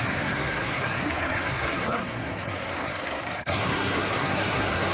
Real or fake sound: fake